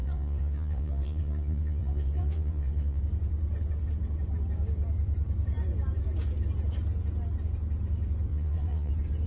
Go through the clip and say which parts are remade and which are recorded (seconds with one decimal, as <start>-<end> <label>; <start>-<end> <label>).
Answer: 0.0-3.0 remade; 3.0-8.3 recorded; 8.3-8.9 remade; 8.9-9.3 recorded